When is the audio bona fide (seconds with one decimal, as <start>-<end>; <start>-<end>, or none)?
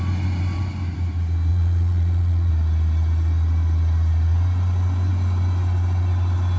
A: 0.0-1.5; 2.5-6.6